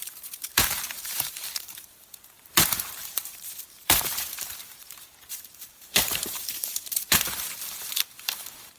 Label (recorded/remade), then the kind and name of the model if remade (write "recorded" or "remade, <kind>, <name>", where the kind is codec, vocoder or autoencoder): remade, vocoder, BigVGAN v2